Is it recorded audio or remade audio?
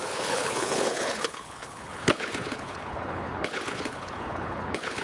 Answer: remade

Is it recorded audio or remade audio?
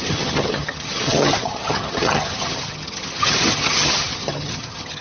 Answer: remade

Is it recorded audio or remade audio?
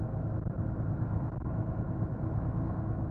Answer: remade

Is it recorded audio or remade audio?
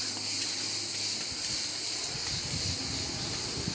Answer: recorded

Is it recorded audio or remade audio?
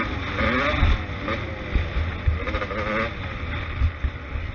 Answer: recorded